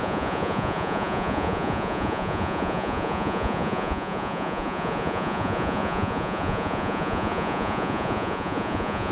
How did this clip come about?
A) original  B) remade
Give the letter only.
B